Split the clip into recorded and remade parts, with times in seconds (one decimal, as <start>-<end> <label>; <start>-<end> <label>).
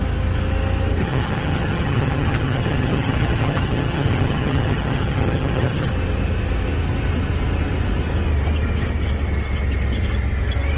0.0-1.0 recorded; 1.0-5.9 remade; 5.9-10.8 recorded